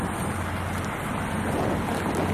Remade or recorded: recorded